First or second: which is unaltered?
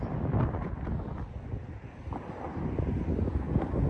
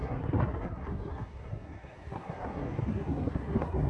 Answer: first